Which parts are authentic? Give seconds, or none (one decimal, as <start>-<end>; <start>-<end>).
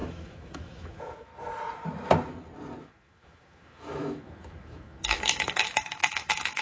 1.3-2.8